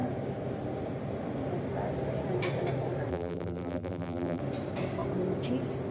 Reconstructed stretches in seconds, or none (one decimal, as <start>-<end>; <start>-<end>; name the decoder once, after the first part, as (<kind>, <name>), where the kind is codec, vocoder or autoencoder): 3.1-4.4 (vocoder, BigVGAN v2)